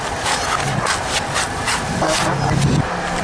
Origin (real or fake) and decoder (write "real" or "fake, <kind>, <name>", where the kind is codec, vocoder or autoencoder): real